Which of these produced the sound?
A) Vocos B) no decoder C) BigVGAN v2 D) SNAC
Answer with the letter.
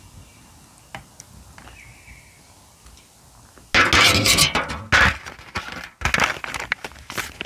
B